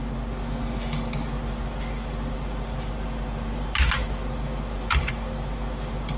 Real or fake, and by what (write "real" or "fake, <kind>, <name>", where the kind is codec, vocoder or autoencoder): real